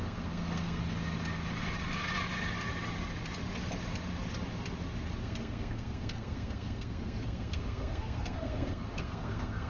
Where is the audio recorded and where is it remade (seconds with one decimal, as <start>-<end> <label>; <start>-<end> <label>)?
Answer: 0.0-0.8 remade; 0.8-5.2 recorded; 5.2-9.7 remade